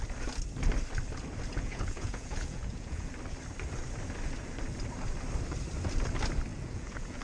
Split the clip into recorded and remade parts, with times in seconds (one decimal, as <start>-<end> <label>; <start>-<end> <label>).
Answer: 0.0-1.5 recorded; 1.5-3.1 remade; 3.1-6.5 recorded; 6.5-7.2 remade